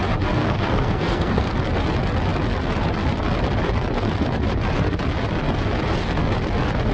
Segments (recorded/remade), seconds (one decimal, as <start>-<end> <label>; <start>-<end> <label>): 0.0-0.4 recorded; 0.4-1.5 remade; 1.5-6.9 recorded